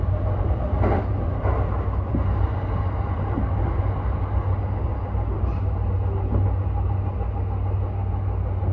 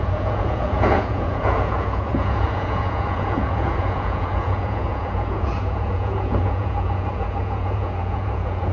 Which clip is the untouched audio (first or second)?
first